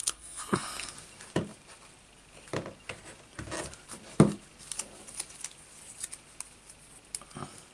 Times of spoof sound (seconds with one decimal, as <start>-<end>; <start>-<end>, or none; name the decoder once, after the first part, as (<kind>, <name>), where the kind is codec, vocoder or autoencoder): 0.0-0.9 (codec, SNAC)